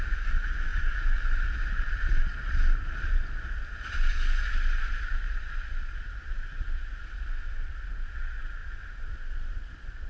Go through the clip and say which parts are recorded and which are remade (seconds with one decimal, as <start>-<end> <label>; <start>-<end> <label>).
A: 0.0-0.7 recorded; 0.7-2.2 remade; 2.2-10.1 recorded